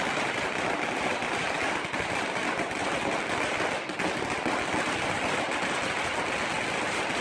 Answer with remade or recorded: recorded